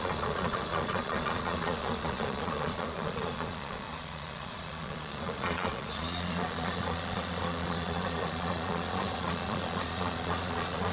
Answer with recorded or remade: remade